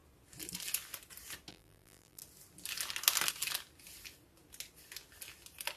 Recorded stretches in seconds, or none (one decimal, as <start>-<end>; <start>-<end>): 0.0-1.5; 2.2-5.8